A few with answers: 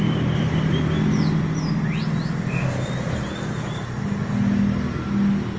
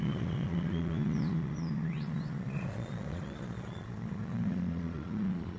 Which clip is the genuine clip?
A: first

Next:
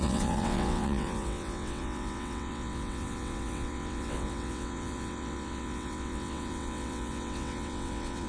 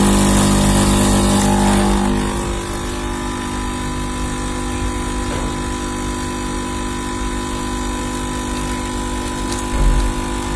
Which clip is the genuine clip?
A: second